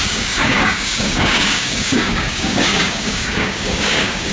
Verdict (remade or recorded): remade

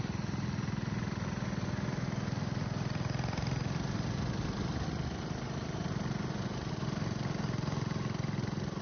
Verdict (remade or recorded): recorded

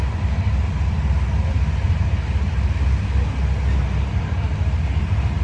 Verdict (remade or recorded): recorded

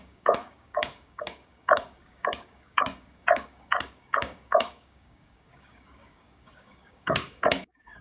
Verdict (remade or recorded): remade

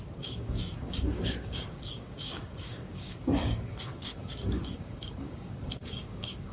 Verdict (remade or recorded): remade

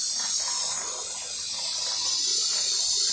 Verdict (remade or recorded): recorded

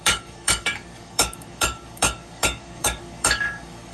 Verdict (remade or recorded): remade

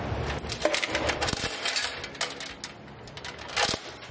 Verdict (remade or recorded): recorded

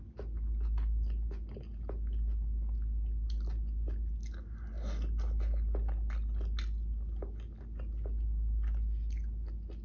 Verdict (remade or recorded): recorded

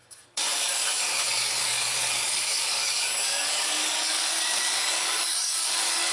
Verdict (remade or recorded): remade